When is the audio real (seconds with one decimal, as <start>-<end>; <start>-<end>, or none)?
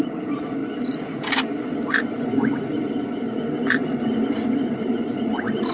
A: 0.0-5.7